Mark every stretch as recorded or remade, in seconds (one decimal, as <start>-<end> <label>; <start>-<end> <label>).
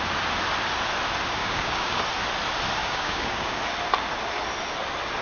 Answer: 0.0-1.4 recorded; 1.4-2.0 remade; 2.0-2.8 recorded; 2.8-3.6 remade; 3.6-5.2 recorded